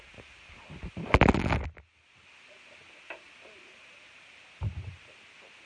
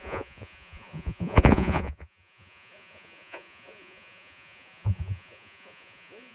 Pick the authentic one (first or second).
first